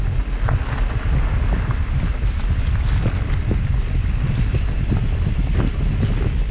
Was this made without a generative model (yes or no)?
yes